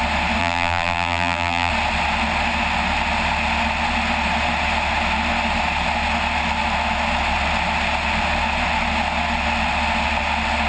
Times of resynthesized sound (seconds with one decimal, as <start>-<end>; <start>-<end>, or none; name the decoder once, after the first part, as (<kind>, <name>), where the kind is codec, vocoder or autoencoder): 0.4-1.7 (vocoder, BigVGAN v2)